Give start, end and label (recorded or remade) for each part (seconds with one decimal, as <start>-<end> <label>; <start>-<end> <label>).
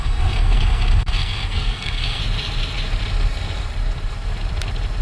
0.0-2.2 remade; 2.2-5.0 recorded